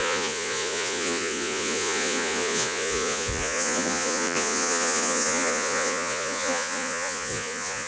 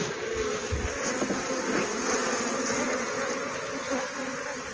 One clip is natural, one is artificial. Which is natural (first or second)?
second